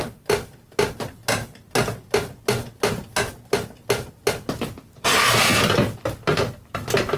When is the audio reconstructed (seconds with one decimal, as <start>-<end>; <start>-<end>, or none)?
none